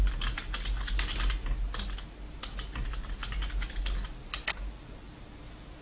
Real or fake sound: real